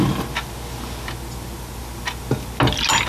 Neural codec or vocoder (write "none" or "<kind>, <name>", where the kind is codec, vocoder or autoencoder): none